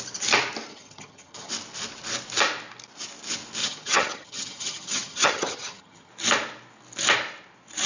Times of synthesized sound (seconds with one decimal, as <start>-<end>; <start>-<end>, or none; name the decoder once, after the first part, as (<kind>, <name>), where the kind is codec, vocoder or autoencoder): 0.7-1.5 (vocoder, HiFi-GAN); 3.6-6.1